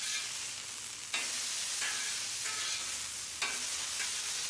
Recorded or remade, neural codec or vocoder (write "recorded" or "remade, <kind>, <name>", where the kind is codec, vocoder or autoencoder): recorded